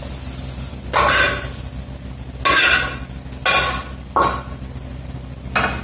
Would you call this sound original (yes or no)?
yes